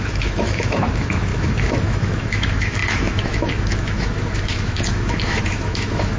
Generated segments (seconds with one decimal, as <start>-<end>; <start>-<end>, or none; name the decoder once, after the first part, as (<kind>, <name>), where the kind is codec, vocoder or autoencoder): 0.0-6.2 (autoencoder, DAC-VAE)